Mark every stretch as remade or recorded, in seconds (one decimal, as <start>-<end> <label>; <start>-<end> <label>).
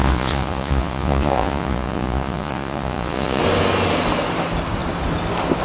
0.0-3.4 remade; 3.4-5.6 recorded